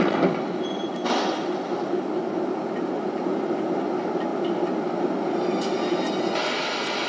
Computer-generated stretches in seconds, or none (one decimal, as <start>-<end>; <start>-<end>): none

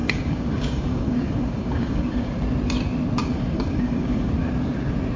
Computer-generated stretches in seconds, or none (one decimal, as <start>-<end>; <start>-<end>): 0.0-2.4; 3.2-4.3

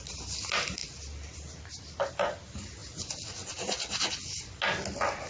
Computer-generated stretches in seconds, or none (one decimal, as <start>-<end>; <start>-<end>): none